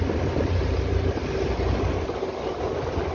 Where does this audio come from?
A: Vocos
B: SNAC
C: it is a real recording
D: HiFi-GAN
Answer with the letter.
C